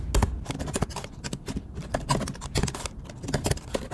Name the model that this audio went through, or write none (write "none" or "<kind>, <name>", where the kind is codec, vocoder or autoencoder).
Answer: none